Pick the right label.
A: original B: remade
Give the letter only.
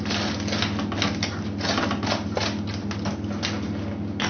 A